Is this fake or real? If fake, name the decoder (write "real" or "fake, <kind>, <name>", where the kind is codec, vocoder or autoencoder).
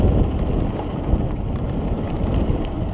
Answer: real